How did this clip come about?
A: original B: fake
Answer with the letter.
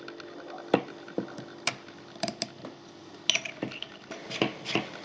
A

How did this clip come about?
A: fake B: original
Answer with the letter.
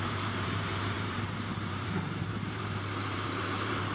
A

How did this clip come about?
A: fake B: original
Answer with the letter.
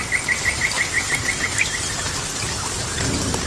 B